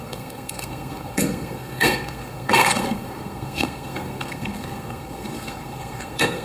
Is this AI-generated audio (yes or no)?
yes